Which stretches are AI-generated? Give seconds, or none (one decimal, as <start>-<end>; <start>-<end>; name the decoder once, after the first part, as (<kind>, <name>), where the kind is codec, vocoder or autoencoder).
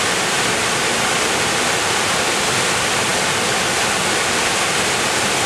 none